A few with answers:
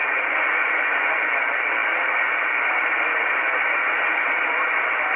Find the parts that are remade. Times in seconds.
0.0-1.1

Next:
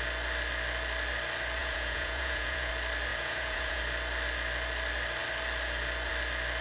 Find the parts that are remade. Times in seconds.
1.6-2.7; 3.1-3.8

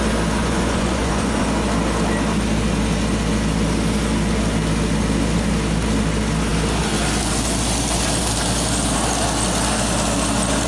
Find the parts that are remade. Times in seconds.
0.4-1.4

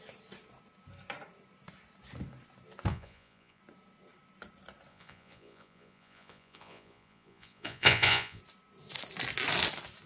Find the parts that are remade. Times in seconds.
2.9-3.6; 4.9-8.4

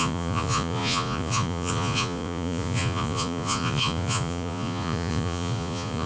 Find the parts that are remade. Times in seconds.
0.0-6.1

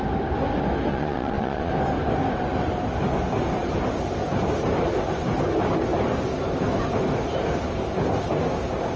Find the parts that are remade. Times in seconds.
0.9-1.7

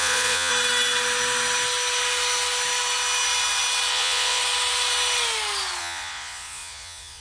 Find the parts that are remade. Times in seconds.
0.0-0.5; 3.9-4.4; 5.8-7.2

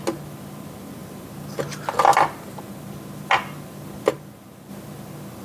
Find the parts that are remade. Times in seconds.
none